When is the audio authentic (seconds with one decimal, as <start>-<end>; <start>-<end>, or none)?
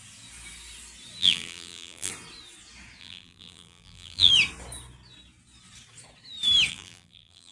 0.0-1.2; 2.1-3.0; 4.3-6.7